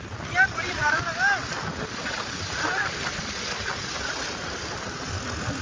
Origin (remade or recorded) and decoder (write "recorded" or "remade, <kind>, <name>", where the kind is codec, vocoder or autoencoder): recorded